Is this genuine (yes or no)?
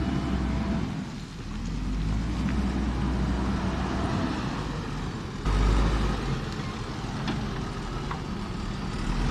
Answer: yes